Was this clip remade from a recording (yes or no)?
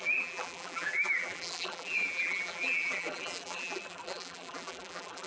yes